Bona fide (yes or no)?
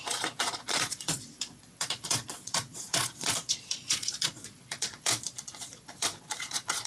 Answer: no